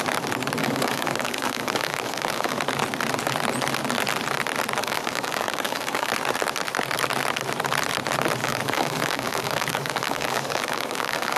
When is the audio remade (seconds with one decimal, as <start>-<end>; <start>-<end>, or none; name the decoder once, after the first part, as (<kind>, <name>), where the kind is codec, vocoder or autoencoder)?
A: 0.6-2.6 (codec, DAC); 4.8-6.1; 8.4-11.4